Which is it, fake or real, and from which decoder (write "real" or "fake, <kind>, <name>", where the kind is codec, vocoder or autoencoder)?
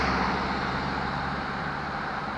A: fake, vocoder, BigVGAN v2